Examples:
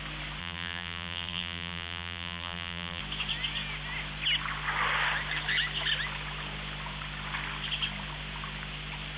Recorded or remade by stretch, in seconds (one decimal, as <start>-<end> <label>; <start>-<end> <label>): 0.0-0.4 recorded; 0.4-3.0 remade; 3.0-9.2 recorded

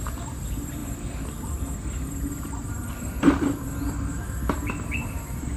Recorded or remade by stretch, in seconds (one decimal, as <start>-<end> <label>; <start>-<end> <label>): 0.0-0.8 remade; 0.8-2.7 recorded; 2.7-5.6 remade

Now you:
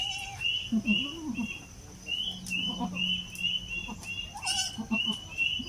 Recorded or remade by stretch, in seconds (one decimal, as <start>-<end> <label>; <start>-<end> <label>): 0.0-5.7 recorded